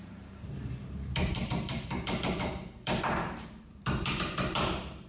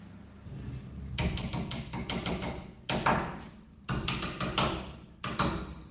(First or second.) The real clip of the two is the second